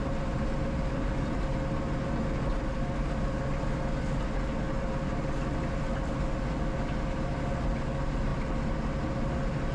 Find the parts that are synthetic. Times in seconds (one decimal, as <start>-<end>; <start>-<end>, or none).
none